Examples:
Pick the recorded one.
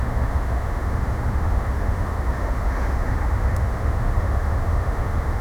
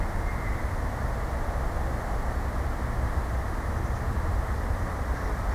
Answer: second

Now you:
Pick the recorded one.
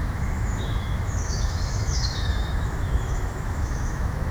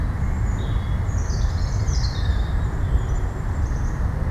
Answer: second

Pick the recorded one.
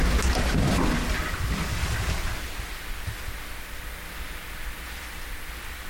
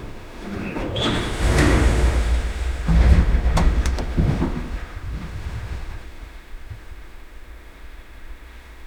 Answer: first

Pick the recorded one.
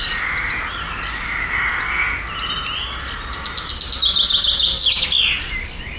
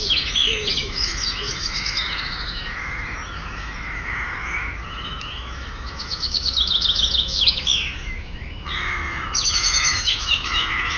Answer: first